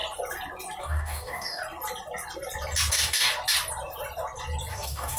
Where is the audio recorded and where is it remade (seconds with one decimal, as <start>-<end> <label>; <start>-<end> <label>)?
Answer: 0.0-0.8 recorded; 0.8-1.6 remade; 1.6-2.9 recorded; 2.9-3.3 remade; 3.3-4.7 recorded; 4.7-5.2 remade